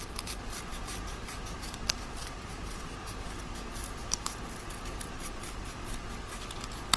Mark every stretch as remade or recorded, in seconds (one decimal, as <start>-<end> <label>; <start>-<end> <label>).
0.0-7.0 remade